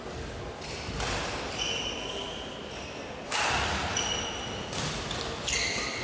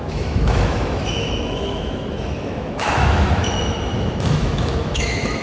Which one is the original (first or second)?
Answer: first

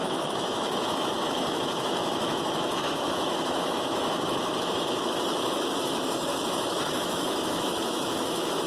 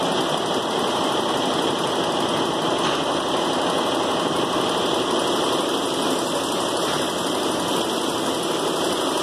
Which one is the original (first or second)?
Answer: second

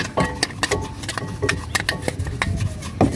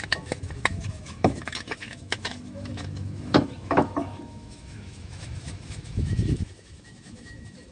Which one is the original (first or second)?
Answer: first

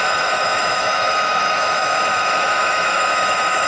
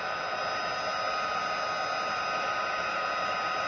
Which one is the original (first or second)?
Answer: second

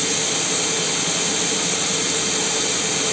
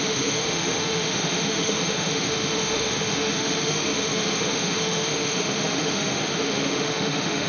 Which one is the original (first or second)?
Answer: first